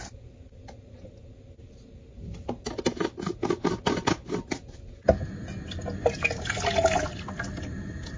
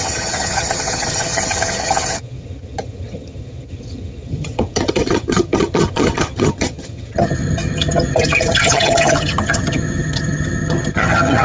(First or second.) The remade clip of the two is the second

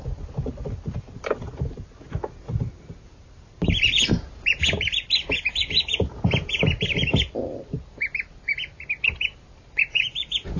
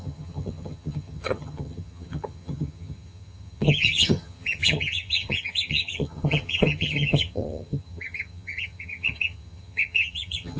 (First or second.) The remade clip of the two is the second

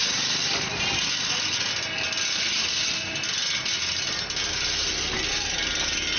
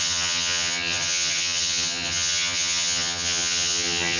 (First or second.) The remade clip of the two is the second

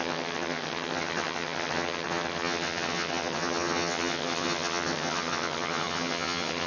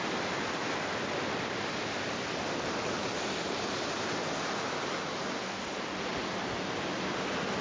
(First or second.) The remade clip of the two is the first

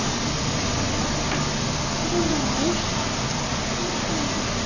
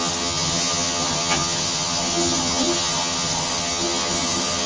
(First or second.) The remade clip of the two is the second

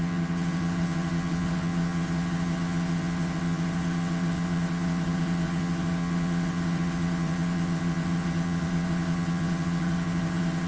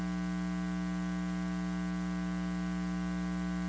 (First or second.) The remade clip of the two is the first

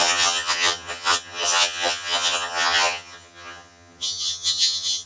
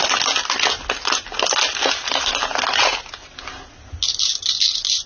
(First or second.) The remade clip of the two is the first